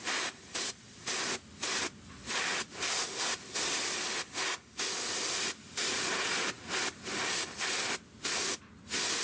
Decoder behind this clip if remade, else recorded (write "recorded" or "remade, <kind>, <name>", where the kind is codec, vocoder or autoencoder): recorded